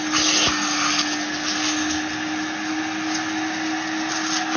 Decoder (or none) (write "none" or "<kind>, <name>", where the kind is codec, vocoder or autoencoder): none